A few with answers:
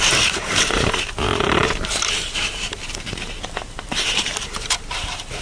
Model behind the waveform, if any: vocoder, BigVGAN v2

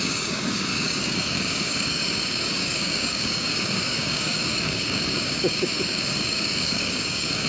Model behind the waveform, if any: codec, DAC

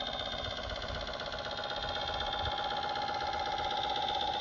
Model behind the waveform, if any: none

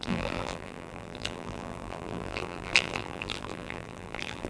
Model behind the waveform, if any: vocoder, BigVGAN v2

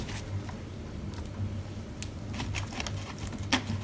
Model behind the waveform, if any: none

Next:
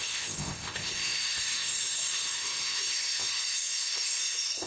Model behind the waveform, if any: codec, ZipCodec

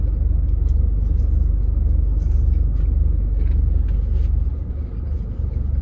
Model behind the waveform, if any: none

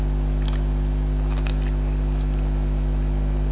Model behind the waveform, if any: none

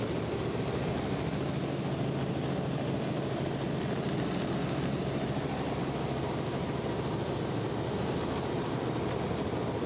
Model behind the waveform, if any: none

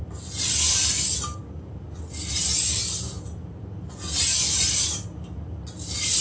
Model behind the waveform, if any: none